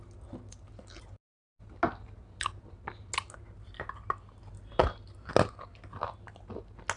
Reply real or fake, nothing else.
real